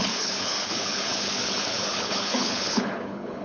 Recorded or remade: remade